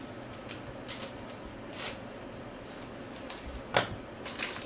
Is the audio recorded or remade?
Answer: recorded